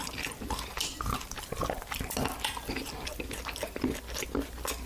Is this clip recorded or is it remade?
recorded